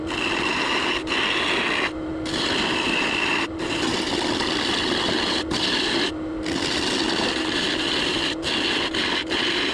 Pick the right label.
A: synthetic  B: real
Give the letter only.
B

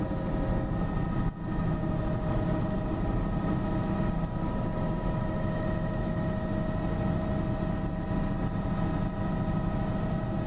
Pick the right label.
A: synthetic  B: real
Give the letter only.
B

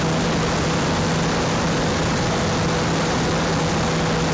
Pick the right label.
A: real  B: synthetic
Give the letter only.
A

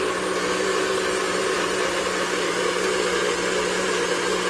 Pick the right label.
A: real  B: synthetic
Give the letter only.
A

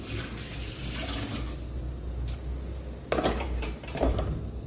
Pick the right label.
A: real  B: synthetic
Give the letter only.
A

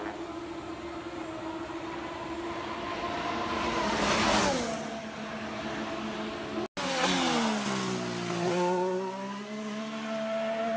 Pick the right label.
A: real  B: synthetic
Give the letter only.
A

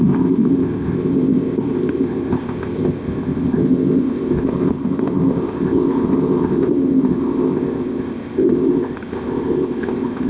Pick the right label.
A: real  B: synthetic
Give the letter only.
B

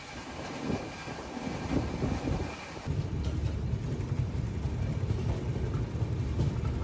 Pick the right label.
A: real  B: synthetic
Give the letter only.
A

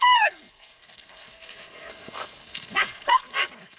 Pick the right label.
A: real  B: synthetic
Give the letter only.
B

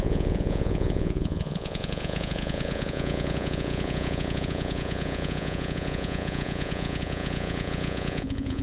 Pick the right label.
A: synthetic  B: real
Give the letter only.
A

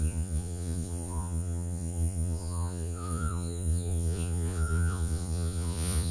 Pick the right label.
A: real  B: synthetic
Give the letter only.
B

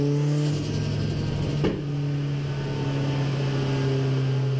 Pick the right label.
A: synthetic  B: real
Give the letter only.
B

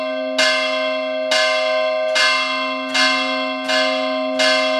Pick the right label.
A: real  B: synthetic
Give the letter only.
A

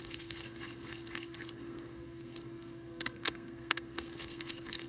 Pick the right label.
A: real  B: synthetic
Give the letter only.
B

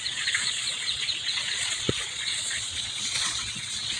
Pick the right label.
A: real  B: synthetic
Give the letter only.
B